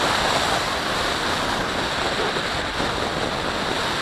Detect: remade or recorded recorded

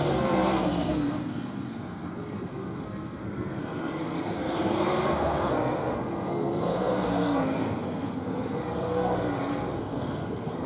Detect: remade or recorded remade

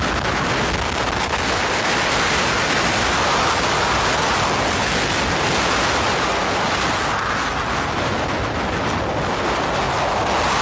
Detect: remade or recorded recorded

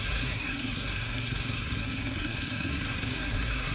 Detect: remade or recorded remade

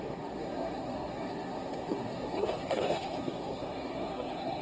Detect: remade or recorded remade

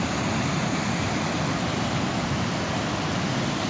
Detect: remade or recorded recorded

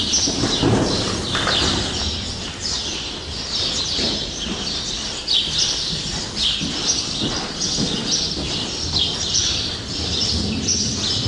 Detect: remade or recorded recorded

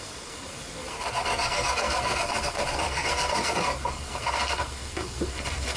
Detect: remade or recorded remade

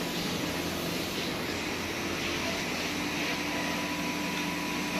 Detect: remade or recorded recorded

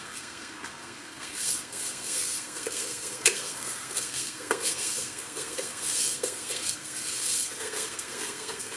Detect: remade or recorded remade